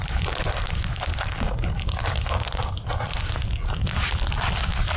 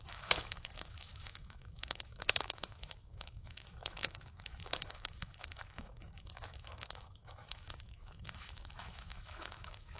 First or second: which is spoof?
second